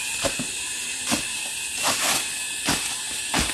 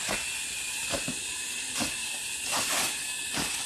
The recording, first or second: first